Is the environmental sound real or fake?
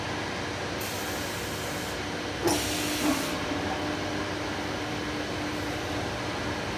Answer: real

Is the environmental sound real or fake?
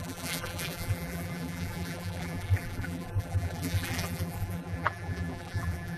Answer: fake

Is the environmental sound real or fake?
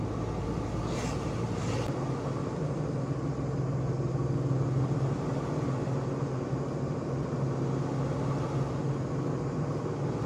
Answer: real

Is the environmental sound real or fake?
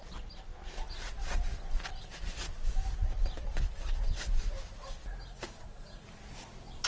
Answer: real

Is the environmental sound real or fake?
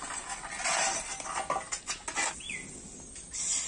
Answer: real